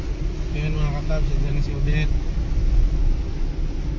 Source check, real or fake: real